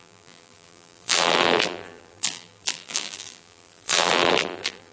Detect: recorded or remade remade